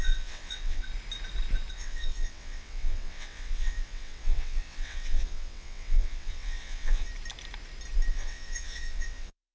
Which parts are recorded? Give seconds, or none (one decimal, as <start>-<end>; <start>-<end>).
0.9-1.7; 7.1-8.1